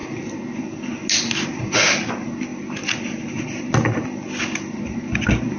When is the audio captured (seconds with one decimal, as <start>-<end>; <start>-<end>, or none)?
0.0-5.6